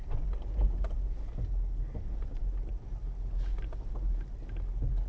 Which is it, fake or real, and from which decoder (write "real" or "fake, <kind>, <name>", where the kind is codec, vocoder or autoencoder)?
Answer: real